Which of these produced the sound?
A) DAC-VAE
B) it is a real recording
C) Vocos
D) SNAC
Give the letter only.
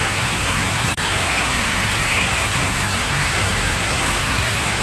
D